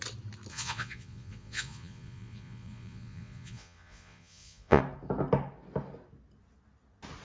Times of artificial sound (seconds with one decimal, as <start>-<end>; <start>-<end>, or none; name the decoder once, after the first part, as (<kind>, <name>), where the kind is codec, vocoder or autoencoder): 0.5-4.8 (vocoder, Vocos)